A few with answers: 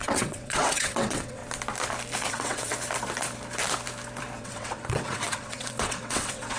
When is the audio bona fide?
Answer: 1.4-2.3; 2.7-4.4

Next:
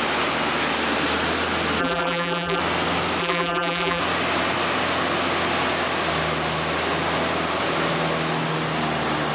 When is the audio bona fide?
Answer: 0.0-1.8; 2.6-3.2; 4.0-9.3

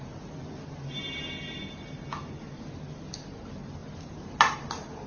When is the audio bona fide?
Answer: 0.0-5.1

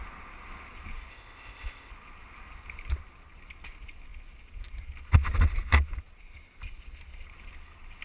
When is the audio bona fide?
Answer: 0.0-1.1; 1.9-8.0